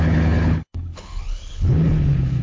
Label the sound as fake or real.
fake